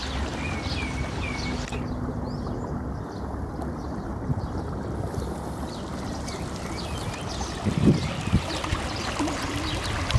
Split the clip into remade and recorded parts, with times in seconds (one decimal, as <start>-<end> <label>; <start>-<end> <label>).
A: 0.0-10.2 recorded